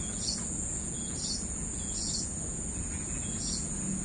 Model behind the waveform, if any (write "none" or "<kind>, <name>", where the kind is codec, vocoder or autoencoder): vocoder, Vocos